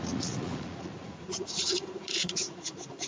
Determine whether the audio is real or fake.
fake